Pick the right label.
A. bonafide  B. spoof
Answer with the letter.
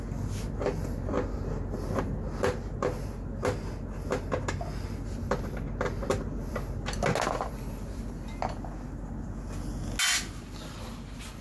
A